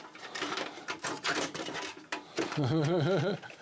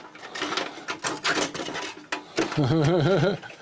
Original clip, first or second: second